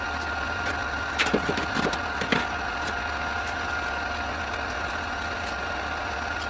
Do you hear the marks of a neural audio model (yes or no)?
no